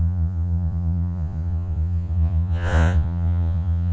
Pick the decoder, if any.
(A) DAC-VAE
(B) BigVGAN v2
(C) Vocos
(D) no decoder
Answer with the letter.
C